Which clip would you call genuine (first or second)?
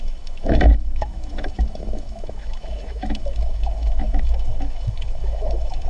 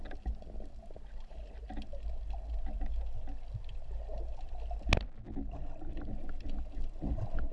second